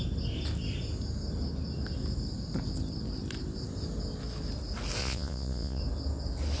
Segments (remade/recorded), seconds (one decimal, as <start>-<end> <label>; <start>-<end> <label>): 0.0-5.0 recorded; 5.0-5.8 remade; 5.8-6.6 recorded